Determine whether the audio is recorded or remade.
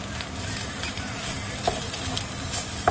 recorded